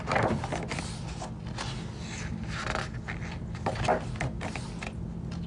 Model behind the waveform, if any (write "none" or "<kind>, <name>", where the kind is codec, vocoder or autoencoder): none